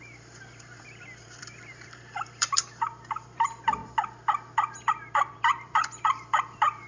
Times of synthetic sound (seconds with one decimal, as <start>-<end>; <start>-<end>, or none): 0.0-3.8; 4.9-6.9